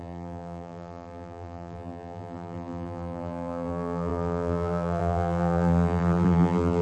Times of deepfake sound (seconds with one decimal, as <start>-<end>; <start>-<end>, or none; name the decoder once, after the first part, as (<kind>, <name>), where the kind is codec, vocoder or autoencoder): 0.0-6.8 (vocoder, BigVGAN v2)